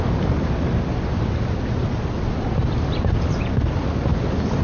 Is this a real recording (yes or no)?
yes